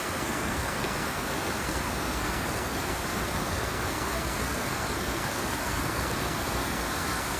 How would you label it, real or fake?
fake